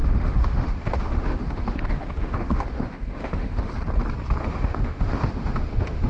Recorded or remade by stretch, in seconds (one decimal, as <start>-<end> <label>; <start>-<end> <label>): 0.0-3.7 remade; 3.7-4.4 recorded; 4.4-6.1 remade